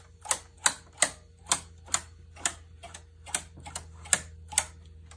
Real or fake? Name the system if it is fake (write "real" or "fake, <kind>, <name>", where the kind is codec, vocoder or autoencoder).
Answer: real